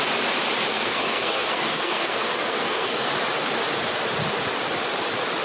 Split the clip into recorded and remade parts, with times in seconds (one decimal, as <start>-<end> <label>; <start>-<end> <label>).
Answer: 0.0-0.7 recorded; 0.7-3.1 remade; 3.1-5.4 recorded